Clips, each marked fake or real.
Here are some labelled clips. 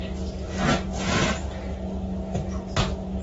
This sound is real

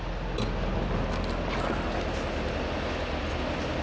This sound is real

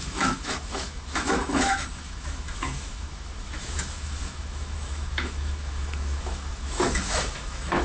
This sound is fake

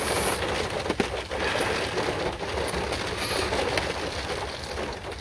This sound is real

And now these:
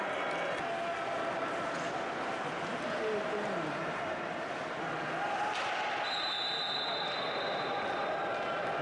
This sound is real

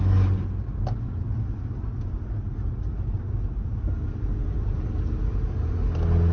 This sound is real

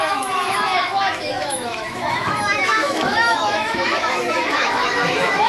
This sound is fake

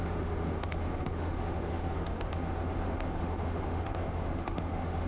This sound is fake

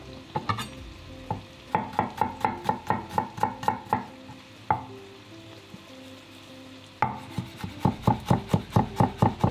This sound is real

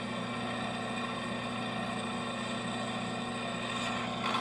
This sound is real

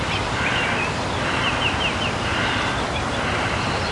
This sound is real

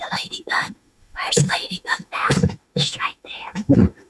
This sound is fake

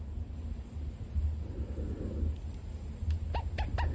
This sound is real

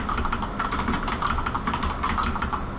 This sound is real